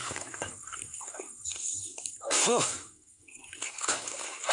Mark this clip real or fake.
fake